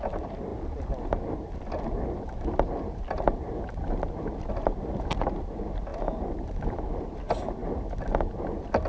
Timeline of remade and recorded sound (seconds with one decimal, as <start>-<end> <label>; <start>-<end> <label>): 0.0-8.9 recorded